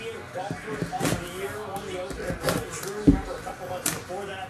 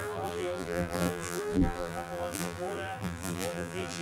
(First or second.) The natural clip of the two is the first